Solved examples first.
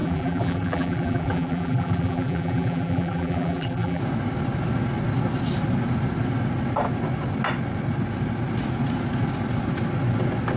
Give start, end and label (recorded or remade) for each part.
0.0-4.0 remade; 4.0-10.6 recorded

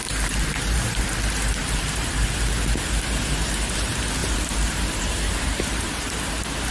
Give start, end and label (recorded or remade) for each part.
0.0-1.0 remade; 1.0-1.6 recorded; 1.6-2.1 remade; 2.1-4.2 recorded; 4.2-5.9 remade; 5.9-6.7 recorded

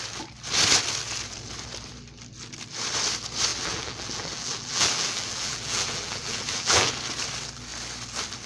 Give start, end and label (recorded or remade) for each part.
0.0-3.5 recorded; 3.5-6.9 remade; 6.9-8.5 recorded

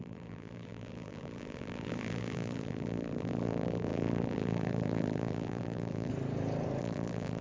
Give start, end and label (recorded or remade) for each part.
0.0-6.1 remade; 6.1-6.8 recorded; 6.8-7.4 remade